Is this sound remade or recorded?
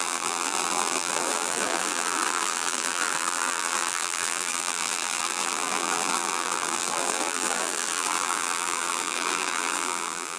remade